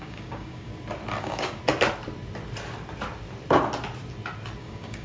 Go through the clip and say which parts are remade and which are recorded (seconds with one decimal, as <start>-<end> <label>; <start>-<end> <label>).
0.0-0.7 remade; 0.7-1.2 recorded; 1.2-1.6 remade; 1.6-4.6 recorded; 4.6-5.0 remade